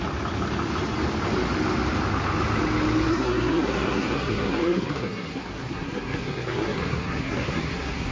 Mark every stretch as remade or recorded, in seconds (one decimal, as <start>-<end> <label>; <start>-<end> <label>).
0.0-3.1 recorded; 3.1-8.1 remade